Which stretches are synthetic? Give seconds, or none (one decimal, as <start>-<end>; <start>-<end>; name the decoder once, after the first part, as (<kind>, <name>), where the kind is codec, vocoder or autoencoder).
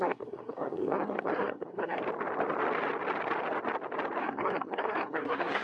0.0-2.0 (codec, SNAC); 4.2-5.6